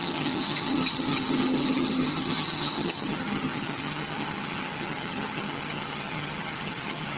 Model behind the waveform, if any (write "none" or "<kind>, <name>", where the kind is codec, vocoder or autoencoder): vocoder, HiFi-GAN